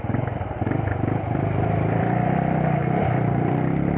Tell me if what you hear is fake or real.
fake